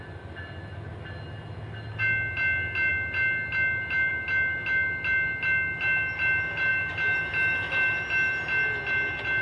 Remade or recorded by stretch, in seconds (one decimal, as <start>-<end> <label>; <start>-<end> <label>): 0.0-9.4 recorded